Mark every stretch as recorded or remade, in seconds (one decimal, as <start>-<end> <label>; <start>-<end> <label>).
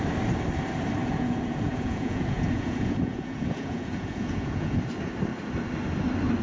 0.0-1.0 recorded; 1.0-4.8 remade; 4.8-6.4 recorded